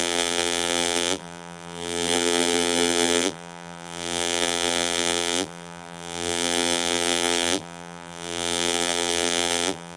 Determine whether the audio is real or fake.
fake